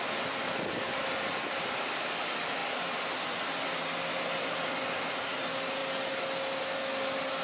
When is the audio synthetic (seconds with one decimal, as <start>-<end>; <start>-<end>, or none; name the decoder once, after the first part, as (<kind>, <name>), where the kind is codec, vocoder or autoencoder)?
none